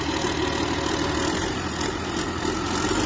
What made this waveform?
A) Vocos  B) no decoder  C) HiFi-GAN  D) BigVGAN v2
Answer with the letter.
B